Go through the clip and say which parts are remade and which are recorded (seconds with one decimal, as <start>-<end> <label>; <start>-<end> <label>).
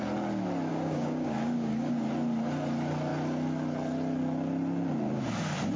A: 0.0-0.7 recorded; 0.7-1.9 remade; 1.9-5.8 recorded